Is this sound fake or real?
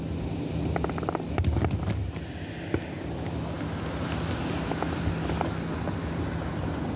real